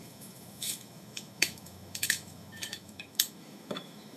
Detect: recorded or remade remade